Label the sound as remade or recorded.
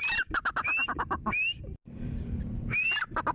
recorded